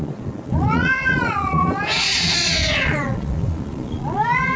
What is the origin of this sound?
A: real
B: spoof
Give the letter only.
B